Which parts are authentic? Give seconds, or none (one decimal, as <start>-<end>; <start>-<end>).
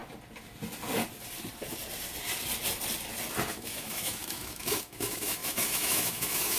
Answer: 0.0-3.5